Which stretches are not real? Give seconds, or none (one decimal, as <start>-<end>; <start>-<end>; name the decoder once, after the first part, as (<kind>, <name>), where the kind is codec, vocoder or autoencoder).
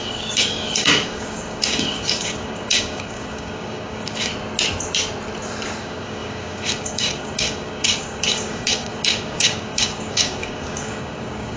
0.0-4.3 (codec, DAC); 5.8-11.6